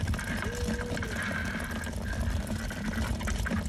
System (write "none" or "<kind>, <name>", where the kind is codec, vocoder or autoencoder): none